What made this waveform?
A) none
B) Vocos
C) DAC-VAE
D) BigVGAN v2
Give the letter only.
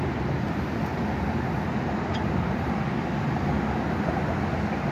A